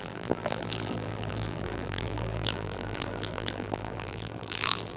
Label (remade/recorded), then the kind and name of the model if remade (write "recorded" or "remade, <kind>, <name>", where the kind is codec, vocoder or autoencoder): remade, vocoder, BigVGAN v2